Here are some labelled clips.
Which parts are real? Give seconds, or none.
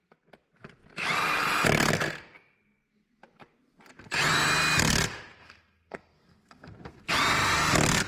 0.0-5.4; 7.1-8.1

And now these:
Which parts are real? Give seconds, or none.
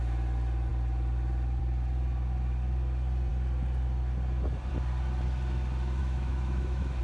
0.0-6.0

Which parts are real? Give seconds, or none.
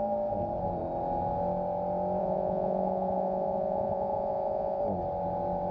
0.0-2.2; 4.8-5.7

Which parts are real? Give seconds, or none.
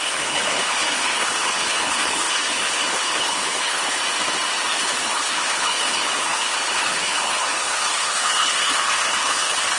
4.0-4.7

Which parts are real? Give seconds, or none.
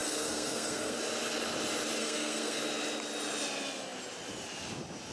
1.0-2.0; 2.6-5.1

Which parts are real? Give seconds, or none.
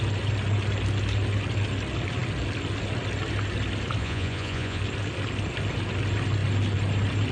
0.0-4.0; 4.8-7.3